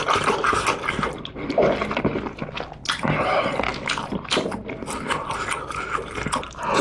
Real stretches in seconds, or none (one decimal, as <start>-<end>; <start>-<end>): 0.0-6.8